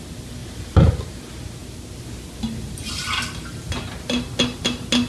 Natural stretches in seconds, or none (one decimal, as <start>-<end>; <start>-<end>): 0.0-5.1